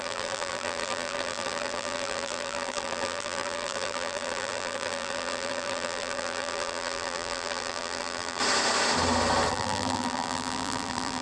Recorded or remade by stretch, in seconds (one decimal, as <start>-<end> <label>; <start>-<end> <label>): 0.0-8.4 remade; 8.4-9.5 recorded; 9.5-11.2 remade

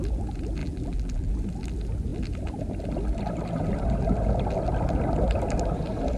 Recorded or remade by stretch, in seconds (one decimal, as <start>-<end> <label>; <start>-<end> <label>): 0.0-0.6 recorded; 0.6-1.3 remade; 1.3-6.2 recorded